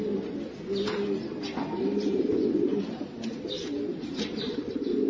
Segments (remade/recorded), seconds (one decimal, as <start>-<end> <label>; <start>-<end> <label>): 0.0-5.1 recorded